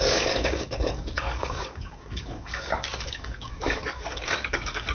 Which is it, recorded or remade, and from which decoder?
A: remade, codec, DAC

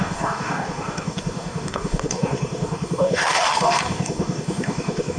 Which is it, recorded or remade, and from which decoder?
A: remade, codec, DAC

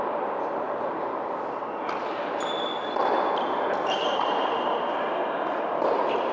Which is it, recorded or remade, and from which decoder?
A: recorded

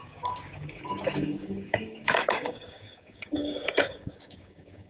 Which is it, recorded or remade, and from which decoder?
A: remade, codec, DAC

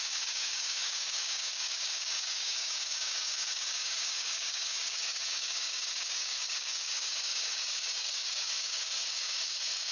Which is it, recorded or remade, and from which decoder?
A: remade, codec, DAC